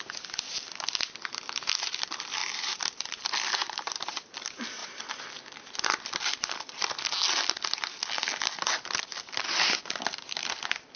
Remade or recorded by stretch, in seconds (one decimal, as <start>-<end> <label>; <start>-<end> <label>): 0.0-2.4 recorded; 2.4-3.5 remade; 3.5-4.8 recorded; 4.8-5.3 remade; 5.3-11.0 recorded